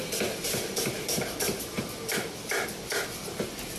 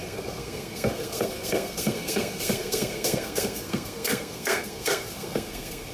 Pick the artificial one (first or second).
second